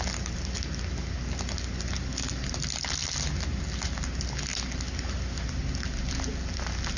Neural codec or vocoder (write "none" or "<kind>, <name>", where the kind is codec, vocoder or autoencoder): none